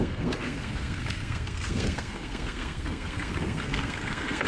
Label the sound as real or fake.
fake